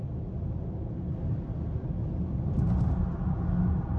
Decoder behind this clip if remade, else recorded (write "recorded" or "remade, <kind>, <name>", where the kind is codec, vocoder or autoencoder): recorded